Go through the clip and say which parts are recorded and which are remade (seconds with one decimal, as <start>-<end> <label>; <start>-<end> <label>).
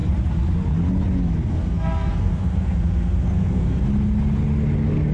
0.0-1.5 recorded; 1.5-3.8 remade; 3.8-5.1 recorded